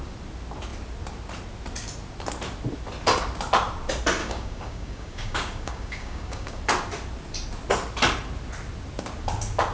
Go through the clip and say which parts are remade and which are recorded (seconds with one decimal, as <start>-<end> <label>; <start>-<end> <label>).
0.0-4.2 recorded; 4.2-6.6 remade; 6.6-9.7 recorded